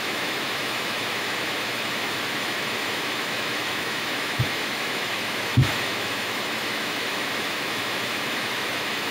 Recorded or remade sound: remade